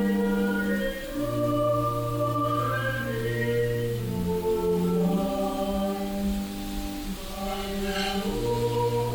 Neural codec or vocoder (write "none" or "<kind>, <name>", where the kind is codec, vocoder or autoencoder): none